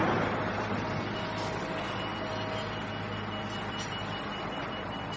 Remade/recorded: recorded